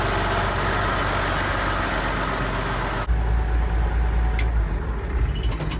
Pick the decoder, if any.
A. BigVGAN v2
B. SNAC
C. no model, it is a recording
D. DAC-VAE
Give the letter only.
C